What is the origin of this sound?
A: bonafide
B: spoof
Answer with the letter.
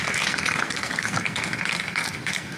B